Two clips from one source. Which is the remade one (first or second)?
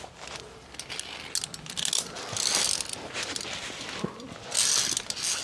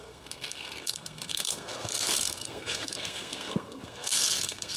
second